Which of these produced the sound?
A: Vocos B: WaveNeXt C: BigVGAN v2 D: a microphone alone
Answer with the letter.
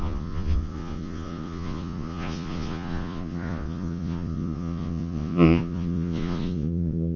A